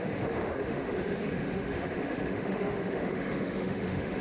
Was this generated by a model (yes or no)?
yes